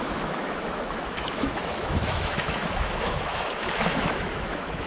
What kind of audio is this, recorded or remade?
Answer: remade